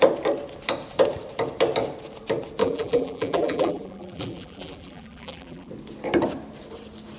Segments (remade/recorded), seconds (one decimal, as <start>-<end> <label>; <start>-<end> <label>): 0.0-2.6 recorded; 2.6-5.7 remade; 5.7-7.2 recorded